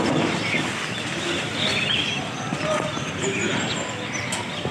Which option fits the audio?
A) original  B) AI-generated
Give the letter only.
A